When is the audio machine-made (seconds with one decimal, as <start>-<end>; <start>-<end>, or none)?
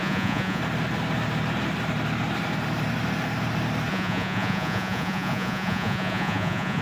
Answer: 0.0-0.6; 3.9-6.8